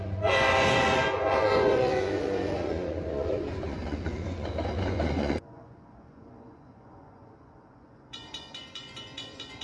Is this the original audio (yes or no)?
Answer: no